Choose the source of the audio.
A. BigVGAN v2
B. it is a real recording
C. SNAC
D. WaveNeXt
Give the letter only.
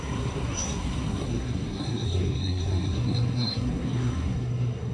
C